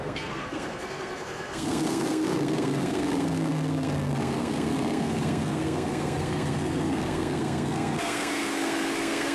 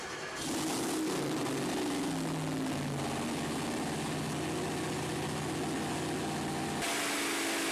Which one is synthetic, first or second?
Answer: first